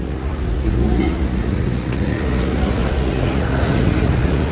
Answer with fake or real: fake